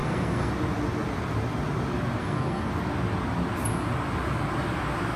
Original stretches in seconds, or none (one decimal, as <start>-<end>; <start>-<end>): 0.5-2.2; 2.7-5.2